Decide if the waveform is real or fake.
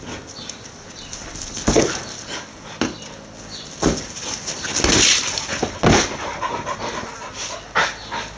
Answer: real